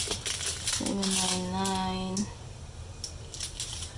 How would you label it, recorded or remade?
recorded